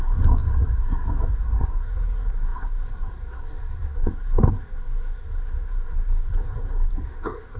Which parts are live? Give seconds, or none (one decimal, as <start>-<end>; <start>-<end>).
none